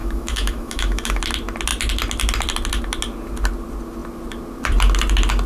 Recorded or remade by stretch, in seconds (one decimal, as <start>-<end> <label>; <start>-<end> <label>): 0.0-1.2 remade; 1.2-5.5 recorded